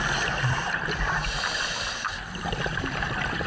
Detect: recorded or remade recorded